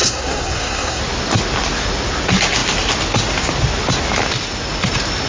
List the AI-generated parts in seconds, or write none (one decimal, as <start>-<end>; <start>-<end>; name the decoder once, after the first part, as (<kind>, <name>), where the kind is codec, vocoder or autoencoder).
0.0-1.0 (codec, SNAC)